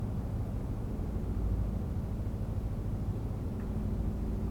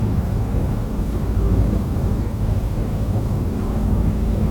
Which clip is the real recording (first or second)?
first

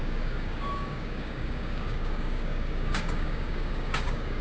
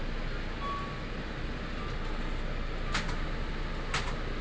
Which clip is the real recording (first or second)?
second